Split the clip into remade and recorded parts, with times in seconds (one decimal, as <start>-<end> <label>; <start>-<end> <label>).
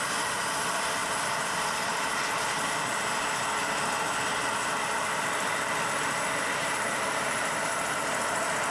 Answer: 0.0-1.0 recorded; 1.0-2.1 remade; 2.1-6.6 recorded; 6.6-7.6 remade; 7.6-8.7 recorded